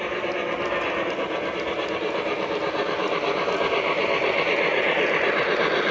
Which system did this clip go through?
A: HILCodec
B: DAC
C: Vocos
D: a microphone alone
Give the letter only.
D